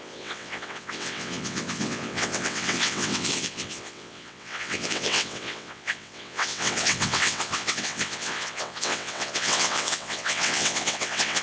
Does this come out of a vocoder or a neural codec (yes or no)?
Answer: yes